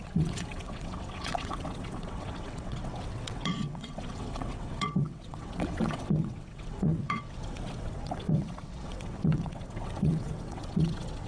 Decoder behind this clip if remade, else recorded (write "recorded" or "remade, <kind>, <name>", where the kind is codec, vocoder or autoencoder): remade, vocoder, WaveNeXt